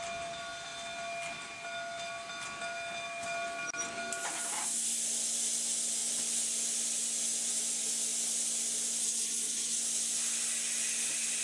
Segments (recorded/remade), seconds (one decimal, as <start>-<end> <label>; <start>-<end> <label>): 0.0-9.0 recorded; 9.0-9.8 remade; 9.8-11.4 recorded